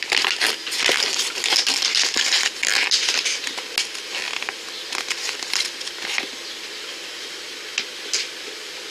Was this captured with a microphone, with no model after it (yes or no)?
yes